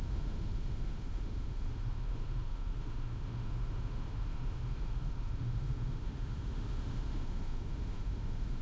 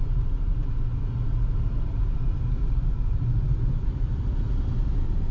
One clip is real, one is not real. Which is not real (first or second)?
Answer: first